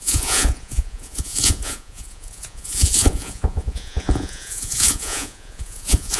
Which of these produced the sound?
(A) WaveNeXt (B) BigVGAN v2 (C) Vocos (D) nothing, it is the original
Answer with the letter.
C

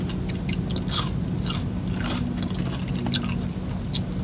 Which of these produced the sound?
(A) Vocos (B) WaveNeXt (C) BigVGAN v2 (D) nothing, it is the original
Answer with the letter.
D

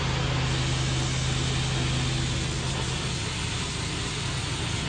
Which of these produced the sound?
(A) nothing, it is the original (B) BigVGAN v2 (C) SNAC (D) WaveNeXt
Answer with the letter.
A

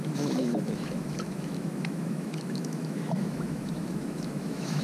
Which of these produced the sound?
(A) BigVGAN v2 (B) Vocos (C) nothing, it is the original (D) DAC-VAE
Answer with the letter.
D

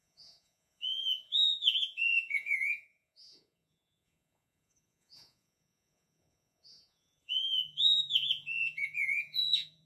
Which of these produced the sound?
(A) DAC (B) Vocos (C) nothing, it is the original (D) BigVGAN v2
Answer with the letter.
B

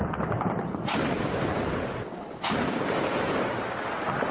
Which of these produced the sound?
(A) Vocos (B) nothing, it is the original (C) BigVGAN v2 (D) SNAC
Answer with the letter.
C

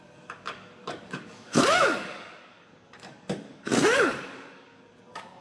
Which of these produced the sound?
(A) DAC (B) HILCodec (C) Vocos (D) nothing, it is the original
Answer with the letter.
A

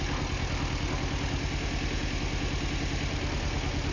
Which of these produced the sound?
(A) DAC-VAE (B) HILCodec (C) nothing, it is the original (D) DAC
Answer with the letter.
C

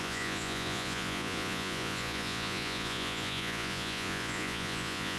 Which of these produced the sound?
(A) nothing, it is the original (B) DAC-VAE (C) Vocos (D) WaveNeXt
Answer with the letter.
C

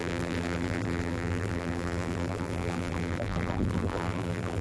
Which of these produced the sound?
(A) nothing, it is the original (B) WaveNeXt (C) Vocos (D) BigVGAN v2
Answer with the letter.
D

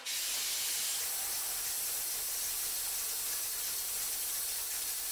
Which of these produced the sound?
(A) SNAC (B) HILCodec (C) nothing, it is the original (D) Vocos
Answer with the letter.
C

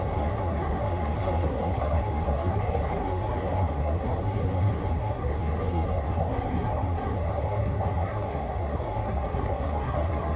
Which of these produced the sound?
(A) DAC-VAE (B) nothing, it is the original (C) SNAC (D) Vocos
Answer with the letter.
C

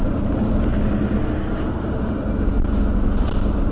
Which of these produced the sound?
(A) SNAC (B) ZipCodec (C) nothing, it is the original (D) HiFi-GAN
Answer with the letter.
C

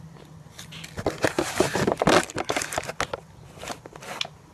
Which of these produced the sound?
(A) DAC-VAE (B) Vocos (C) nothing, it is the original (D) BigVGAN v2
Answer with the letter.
C